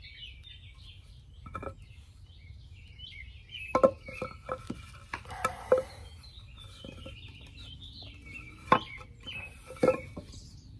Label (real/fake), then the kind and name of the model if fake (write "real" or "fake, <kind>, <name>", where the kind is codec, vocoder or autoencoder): real